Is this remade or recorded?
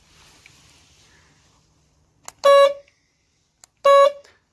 recorded